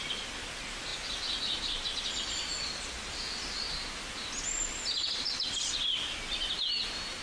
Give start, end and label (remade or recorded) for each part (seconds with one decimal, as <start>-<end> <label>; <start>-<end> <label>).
0.0-7.2 recorded